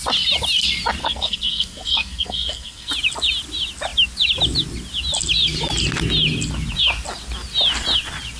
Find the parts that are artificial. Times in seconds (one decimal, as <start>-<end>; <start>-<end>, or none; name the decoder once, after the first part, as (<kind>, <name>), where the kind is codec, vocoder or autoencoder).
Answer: 1.0-2.9 (codec, SNAC)